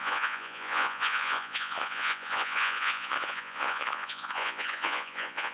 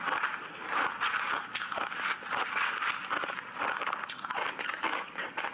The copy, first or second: first